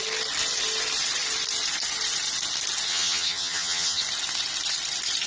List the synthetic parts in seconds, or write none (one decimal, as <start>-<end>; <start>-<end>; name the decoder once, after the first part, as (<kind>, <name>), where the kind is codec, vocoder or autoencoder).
2.9-4.0 (vocoder, HiFi-GAN)

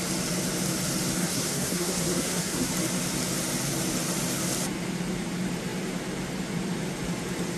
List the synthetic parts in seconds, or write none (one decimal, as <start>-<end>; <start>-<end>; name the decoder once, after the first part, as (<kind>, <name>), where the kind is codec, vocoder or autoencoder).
1.2-2.7 (codec, SNAC)

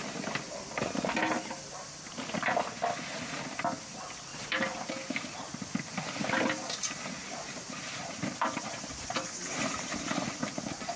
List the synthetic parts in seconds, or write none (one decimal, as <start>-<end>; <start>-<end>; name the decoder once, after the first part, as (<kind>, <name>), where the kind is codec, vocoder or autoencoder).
4.3-4.9 (vocoder, BigVGAN v2); 7.2-9.5

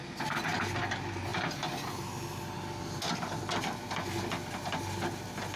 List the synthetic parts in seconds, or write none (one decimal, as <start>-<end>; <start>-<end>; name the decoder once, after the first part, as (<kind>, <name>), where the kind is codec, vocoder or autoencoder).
none